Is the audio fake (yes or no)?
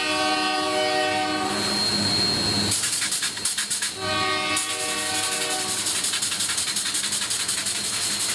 no